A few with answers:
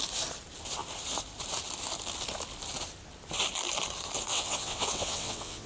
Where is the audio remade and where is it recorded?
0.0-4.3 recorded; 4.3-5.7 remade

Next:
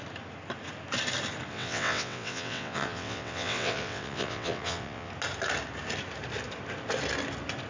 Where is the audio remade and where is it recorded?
0.0-1.5 recorded; 1.5-5.1 remade; 5.1-7.7 recorded

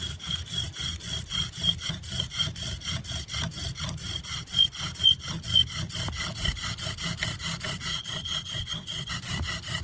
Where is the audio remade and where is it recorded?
0.0-7.9 recorded; 7.9-9.1 remade; 9.1-9.8 recorded

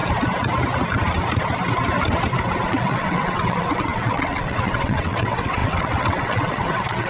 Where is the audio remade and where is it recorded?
0.0-2.7 recorded; 2.7-7.1 remade